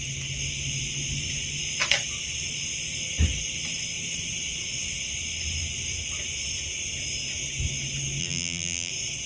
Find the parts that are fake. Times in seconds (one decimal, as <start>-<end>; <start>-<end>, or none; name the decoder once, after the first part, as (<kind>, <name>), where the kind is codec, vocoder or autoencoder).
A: 8.2-8.9 (vocoder, BigVGAN v2)